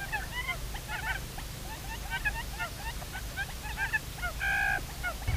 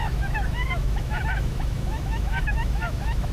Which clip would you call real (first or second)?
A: first